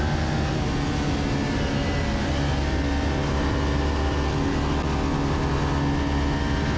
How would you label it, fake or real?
real